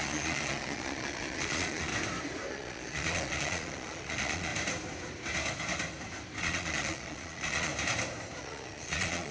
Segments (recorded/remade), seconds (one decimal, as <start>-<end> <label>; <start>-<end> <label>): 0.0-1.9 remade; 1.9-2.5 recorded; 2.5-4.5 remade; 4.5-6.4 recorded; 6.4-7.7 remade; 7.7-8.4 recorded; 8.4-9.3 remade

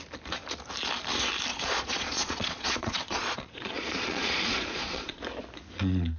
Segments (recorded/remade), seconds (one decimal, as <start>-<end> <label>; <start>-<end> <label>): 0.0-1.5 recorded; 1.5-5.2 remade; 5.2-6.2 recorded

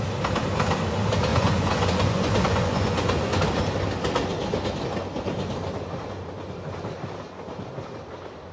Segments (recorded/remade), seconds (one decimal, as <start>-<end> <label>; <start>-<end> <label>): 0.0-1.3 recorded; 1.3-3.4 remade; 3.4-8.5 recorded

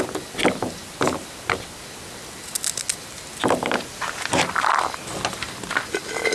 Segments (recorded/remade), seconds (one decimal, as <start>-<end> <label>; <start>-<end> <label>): 0.0-6.3 recorded

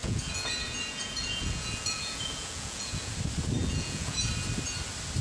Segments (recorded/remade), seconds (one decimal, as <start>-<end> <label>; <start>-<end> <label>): 0.0-3.1 remade; 3.1-3.6 recorded; 3.6-4.3 remade; 4.3-5.2 recorded

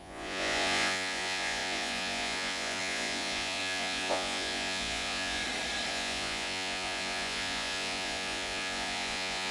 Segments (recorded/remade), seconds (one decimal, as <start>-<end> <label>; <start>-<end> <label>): 0.0-5.4 remade; 5.4-5.9 recorded; 5.9-9.5 remade